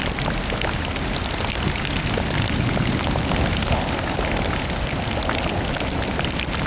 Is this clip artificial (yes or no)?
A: no